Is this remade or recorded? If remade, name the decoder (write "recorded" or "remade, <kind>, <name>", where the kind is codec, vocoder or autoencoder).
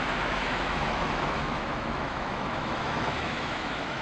remade, autoencoder, DAC-VAE